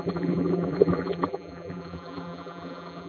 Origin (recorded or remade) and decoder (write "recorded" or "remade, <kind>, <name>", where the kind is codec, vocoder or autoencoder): remade, vocoder, BigVGAN v2